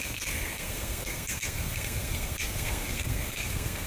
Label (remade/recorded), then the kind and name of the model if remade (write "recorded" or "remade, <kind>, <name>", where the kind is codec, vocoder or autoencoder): remade, codec, SNAC